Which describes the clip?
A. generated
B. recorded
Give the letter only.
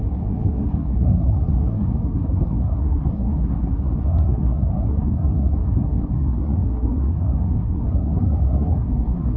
A